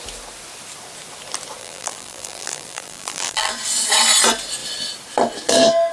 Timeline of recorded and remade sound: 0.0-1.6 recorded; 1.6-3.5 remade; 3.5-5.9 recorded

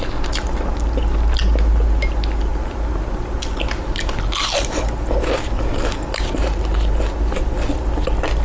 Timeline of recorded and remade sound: 0.0-8.4 recorded